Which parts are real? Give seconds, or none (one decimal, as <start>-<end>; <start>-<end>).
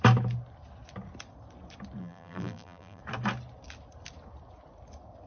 0.0-2.0; 3.0-5.3